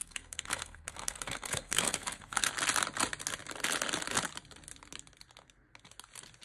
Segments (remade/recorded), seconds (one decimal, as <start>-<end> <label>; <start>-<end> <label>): 0.0-2.5 remade; 2.5-6.4 recorded